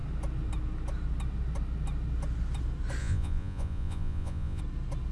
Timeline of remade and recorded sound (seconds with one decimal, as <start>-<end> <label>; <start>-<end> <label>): 0.0-3.0 recorded; 3.0-4.6 remade; 4.6-5.1 recorded